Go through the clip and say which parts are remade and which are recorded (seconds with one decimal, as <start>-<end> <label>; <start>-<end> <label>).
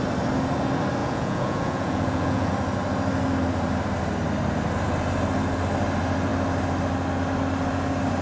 0.0-1.0 recorded; 1.0-2.5 remade; 2.5-8.2 recorded